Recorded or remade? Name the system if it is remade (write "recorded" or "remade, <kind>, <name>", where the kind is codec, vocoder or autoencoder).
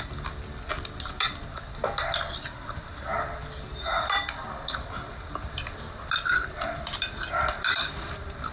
remade, vocoder, BigVGAN v2